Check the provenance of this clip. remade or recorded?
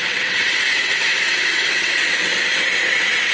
remade